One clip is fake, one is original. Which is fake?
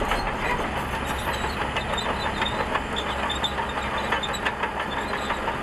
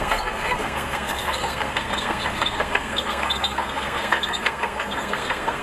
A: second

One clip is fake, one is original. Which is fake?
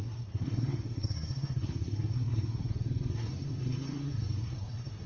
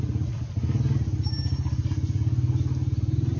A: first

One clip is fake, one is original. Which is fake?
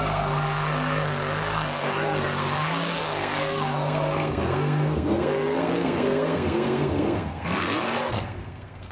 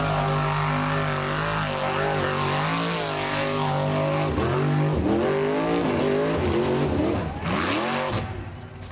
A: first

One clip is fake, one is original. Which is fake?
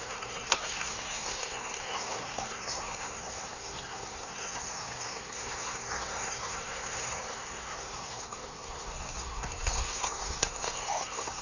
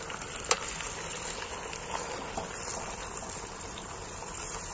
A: first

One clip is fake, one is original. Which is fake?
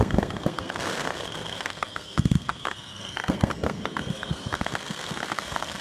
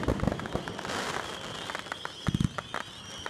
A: first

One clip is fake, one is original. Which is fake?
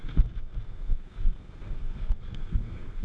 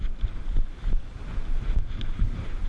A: first